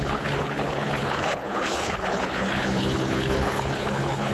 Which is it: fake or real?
fake